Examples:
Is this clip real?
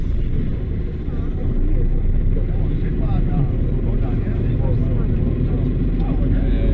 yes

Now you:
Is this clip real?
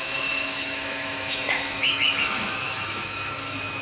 no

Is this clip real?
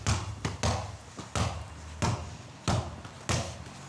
yes